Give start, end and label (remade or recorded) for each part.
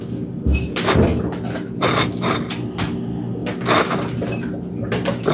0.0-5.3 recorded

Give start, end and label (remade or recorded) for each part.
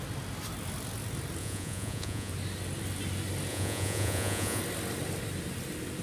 0.0-1.4 recorded; 1.4-2.3 remade; 2.3-3.5 recorded; 3.5-4.6 remade; 4.6-6.0 recorded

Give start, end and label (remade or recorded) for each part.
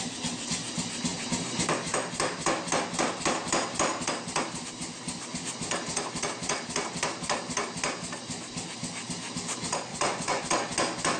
0.0-9.9 recorded; 9.9-10.4 remade; 10.4-11.2 recorded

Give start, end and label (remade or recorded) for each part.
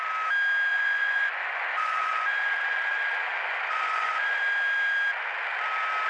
0.0-0.7 recorded; 0.7-4.4 remade; 4.4-6.1 recorded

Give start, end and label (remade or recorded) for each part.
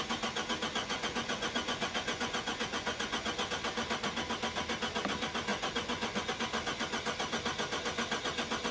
0.0-0.8 recorded; 0.8-3.5 remade; 3.5-5.5 recorded; 5.5-6.3 remade; 6.3-8.7 recorded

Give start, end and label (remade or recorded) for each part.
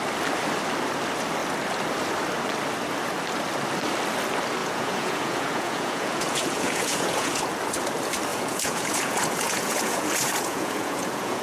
0.0-4.6 recorded; 4.6-7.4 remade; 7.4-8.3 recorded; 8.3-11.4 remade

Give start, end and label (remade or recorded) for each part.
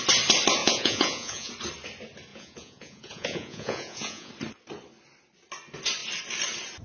0.0-0.6 recorded; 0.6-1.5 remade; 1.5-2.3 recorded; 2.3-4.3 remade; 4.3-6.8 recorded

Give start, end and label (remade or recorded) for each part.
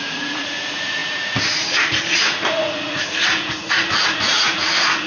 0.0-5.1 remade